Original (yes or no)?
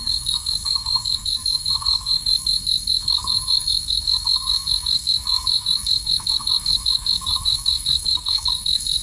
no